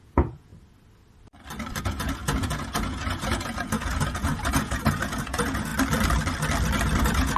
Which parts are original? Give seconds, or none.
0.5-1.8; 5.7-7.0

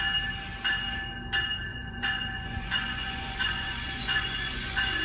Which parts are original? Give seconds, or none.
0.0-1.7

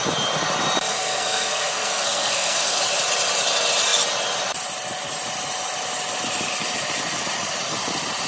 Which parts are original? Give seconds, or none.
0.0-0.9; 2.8-8.3

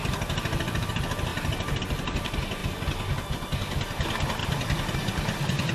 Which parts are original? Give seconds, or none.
0.9-1.3; 1.8-2.6; 3.3-4.4

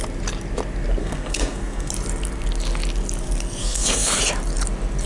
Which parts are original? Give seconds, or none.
0.0-1.0; 1.9-3.6; 4.2-5.1

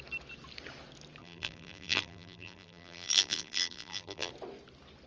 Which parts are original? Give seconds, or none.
0.0-1.2; 4.3-5.1

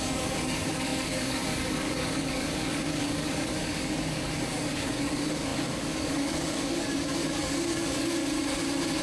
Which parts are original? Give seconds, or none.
8.2-9.0